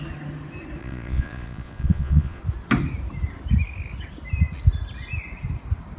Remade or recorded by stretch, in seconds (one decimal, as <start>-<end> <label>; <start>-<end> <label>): 0.0-0.8 recorded; 0.8-2.4 remade; 2.4-6.0 recorded